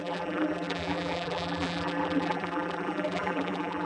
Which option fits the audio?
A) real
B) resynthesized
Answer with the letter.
B